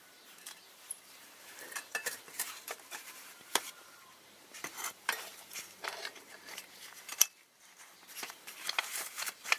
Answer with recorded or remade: remade